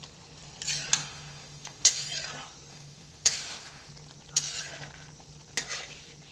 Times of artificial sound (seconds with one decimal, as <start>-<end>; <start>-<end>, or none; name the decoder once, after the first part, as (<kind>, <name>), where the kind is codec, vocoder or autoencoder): 1.0-2.1 (autoencoder, DAC-VAE); 2.7-3.9